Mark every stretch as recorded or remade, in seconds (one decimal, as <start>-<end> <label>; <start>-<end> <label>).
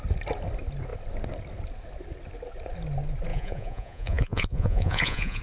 0.0-3.3 recorded; 3.3-5.4 remade